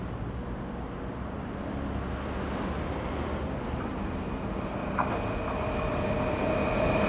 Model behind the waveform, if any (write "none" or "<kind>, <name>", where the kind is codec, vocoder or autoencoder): none